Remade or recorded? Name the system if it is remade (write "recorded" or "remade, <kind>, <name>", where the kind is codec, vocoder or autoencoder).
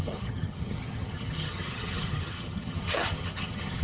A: remade, vocoder, HiFi-GAN